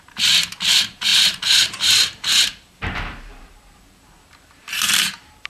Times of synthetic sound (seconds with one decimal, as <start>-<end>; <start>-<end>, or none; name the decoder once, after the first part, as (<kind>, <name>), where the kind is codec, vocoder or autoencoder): 0.0-5.5 (vocoder, BigVGAN v2)